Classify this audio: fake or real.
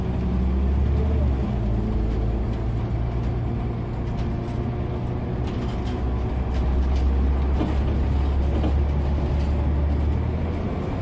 real